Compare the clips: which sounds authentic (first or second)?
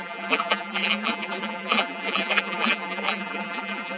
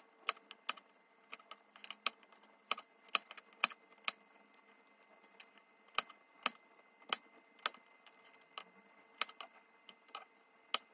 second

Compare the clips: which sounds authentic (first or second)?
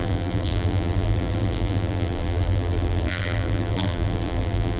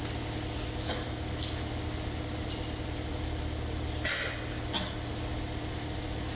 second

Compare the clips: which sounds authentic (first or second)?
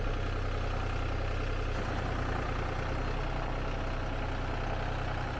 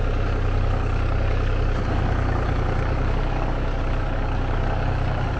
first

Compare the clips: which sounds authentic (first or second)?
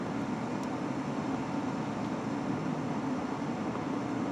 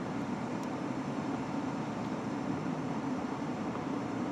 first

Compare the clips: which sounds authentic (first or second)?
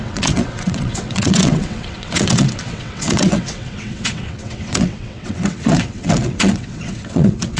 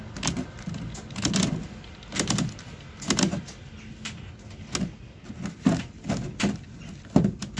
second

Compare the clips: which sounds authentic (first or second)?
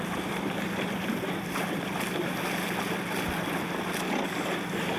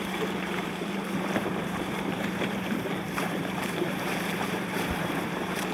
first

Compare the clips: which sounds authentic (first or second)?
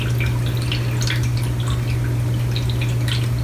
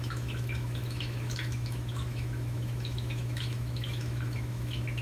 first